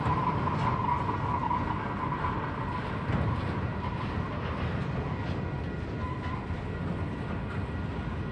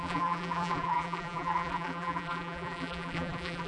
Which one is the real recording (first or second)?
first